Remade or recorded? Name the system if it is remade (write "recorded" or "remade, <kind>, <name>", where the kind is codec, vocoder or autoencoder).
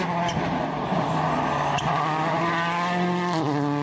recorded